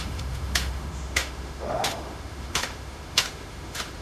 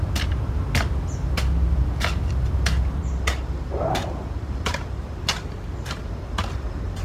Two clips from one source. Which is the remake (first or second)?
first